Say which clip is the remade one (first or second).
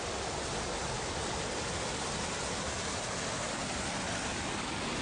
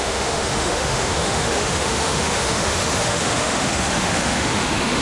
second